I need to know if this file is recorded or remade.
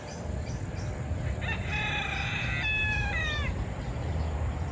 recorded